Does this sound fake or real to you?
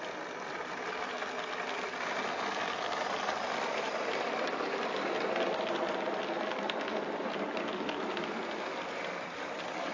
real